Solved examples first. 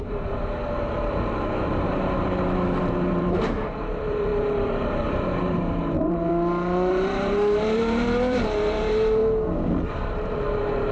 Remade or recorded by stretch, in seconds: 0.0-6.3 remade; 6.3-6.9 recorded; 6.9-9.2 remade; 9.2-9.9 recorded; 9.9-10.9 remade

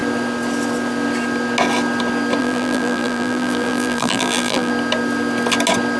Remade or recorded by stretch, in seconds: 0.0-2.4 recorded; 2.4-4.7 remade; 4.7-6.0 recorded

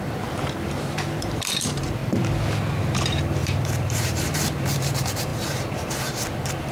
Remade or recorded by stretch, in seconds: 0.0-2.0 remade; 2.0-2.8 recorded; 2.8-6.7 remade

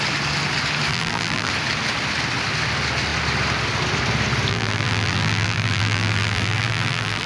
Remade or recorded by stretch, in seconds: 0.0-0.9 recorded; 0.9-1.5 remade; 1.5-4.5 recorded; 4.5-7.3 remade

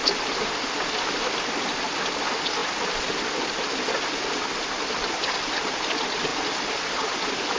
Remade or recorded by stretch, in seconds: 0.0-2.0 remade; 2.0-7.6 recorded

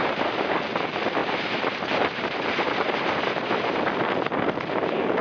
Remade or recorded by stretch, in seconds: 0.0-0.6 remade; 0.6-1.2 recorded; 1.2-3.8 remade; 3.8-5.2 recorded